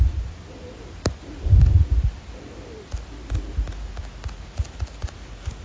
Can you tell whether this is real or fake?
real